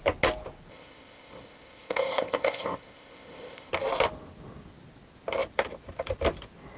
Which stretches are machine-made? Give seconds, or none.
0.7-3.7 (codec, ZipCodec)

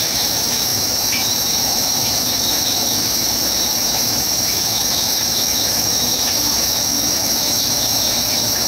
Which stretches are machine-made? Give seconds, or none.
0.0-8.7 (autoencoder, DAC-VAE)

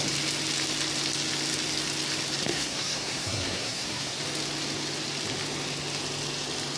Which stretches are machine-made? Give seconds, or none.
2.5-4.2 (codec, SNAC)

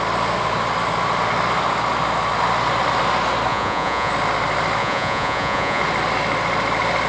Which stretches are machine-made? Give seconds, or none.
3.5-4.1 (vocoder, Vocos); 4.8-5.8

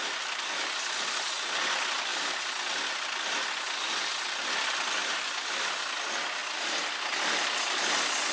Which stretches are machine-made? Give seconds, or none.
none